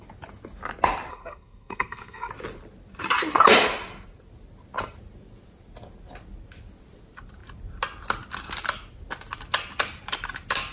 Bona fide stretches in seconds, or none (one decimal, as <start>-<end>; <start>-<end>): 0.0-1.1; 2.3-10.7